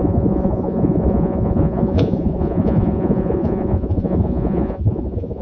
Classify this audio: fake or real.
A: fake